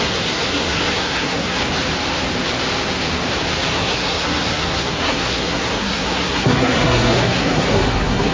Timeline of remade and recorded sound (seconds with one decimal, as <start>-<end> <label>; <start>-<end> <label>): 0.0-1.6 remade; 1.6-3.7 recorded; 3.7-8.3 remade